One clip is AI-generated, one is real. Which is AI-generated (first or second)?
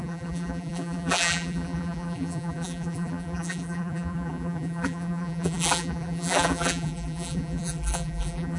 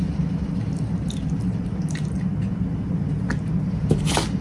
first